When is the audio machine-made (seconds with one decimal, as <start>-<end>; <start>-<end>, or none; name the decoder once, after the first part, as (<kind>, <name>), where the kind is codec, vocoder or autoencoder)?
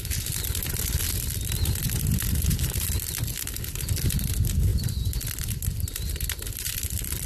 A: none